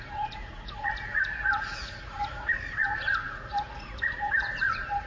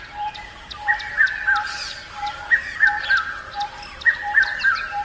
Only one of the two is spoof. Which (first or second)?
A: first